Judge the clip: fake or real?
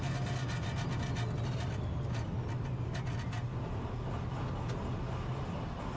real